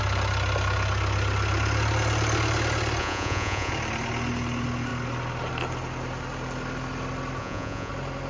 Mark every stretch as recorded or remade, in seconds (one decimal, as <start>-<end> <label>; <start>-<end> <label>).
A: 0.0-3.0 recorded; 3.0-3.7 remade; 3.7-7.4 recorded; 7.4-7.9 remade; 7.9-8.3 recorded